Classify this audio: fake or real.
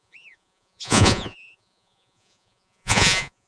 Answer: fake